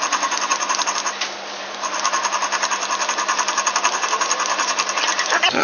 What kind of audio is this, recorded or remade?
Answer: recorded